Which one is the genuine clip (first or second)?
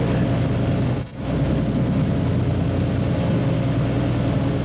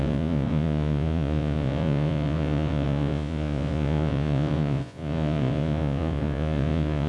first